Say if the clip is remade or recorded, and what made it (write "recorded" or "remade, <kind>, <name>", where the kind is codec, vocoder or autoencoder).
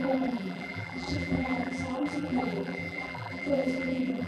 remade, vocoder, BigVGAN v2